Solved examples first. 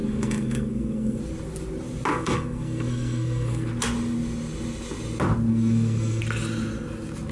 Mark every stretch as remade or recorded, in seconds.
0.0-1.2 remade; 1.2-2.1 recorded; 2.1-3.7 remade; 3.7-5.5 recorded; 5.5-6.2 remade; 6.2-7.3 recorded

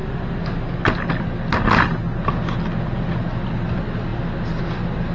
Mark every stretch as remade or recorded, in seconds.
0.0-5.1 recorded

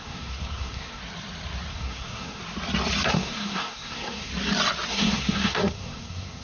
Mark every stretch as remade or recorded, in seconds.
0.0-1.0 remade; 1.0-1.7 recorded; 1.7-2.4 remade; 2.4-3.1 recorded; 3.1-4.3 remade; 4.3-4.9 recorded; 4.9-6.4 remade

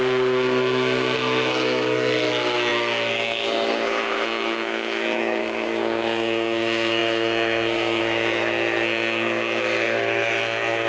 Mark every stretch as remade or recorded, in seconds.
0.0-10.9 remade

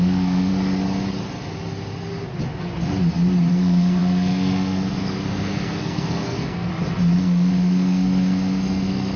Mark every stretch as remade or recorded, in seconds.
0.0-0.5 remade; 0.5-3.5 recorded; 3.5-6.7 remade; 6.7-7.2 recorded; 7.2-9.2 remade

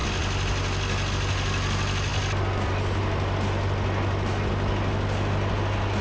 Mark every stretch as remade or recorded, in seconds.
0.0-6.0 recorded